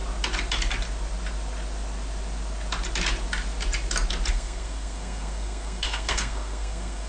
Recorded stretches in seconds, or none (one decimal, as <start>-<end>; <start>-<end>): 0.0-4.3